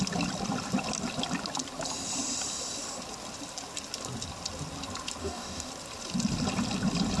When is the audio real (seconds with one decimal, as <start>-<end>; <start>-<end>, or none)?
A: 0.0-5.2; 5.7-7.2